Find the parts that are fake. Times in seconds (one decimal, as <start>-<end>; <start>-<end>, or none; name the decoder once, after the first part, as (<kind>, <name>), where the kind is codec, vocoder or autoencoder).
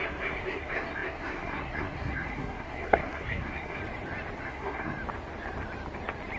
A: 0.0-3.8 (codec, SNAC); 4.4-5.0